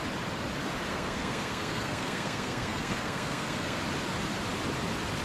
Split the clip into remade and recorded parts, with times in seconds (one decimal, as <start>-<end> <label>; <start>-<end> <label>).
0.0-0.9 recorded; 0.9-3.8 remade; 3.8-5.2 recorded